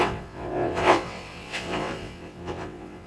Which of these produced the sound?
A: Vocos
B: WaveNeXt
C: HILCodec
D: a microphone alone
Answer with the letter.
B